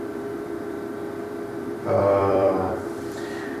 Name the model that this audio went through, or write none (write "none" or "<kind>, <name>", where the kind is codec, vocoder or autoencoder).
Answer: vocoder, BigVGAN v2